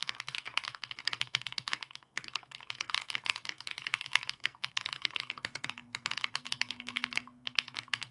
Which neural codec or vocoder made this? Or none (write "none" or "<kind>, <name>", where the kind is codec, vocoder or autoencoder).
codec, SNAC